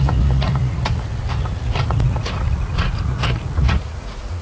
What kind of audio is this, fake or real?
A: fake